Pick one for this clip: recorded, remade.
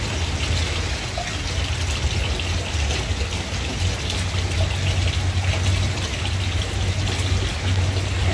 recorded